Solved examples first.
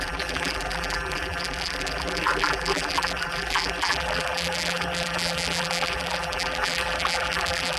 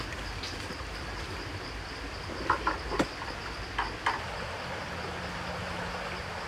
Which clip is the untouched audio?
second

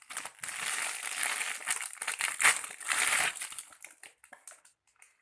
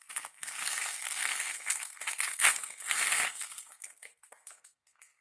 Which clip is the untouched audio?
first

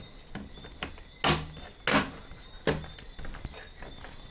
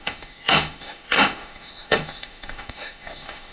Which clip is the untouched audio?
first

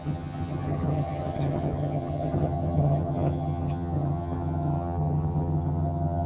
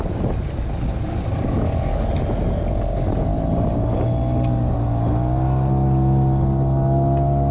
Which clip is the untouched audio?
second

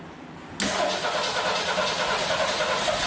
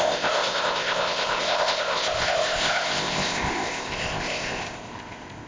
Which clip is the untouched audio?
first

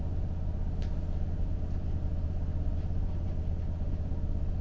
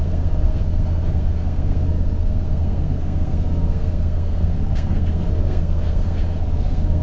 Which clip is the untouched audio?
first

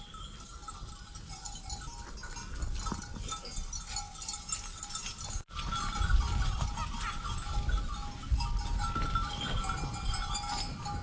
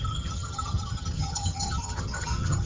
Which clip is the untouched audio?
first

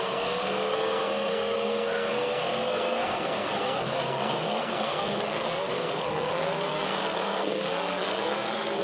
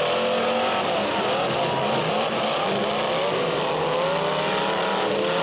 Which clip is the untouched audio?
second